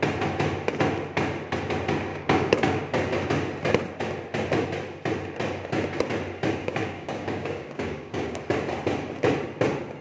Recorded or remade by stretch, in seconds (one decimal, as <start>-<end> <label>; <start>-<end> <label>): 0.0-2.1 recorded; 2.1-2.8 remade; 2.8-6.6 recorded; 6.6-8.4 remade; 8.4-10.0 recorded